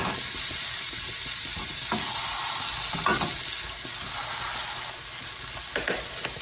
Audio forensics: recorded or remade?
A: recorded